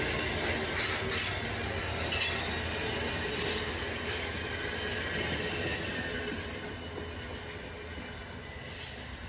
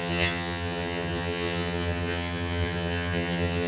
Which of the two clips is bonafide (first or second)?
first